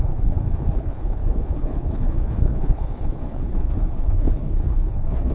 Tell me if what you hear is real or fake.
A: fake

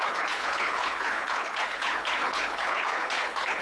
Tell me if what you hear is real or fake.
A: fake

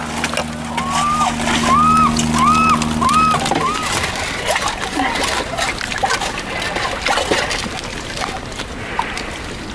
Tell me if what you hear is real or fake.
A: real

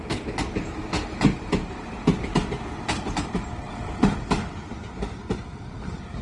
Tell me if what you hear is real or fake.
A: real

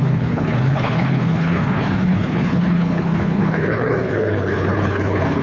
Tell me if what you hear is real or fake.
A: fake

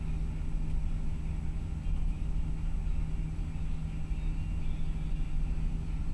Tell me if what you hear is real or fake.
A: real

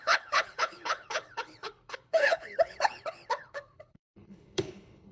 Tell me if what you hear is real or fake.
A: fake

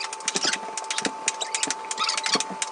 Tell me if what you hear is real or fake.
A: real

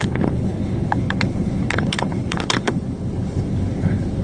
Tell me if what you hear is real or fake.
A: fake